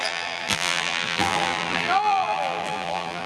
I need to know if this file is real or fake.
fake